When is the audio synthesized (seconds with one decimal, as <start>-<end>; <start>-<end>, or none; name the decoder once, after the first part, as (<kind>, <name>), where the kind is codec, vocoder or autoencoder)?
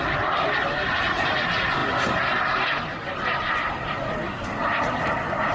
none